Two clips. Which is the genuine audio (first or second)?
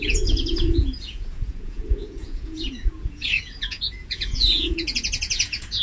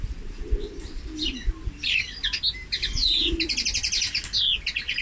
second